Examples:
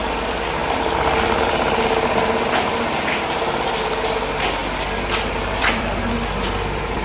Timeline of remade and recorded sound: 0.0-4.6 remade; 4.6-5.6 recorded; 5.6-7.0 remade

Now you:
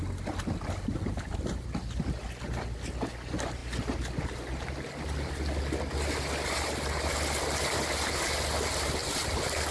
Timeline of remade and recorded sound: 0.0-0.9 recorded; 0.9-2.2 remade; 2.2-9.7 recorded

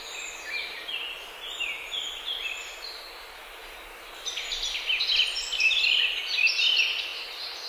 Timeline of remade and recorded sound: 0.0-0.6 recorded; 0.6-2.9 remade; 2.9-7.1 recorded; 7.1-7.7 remade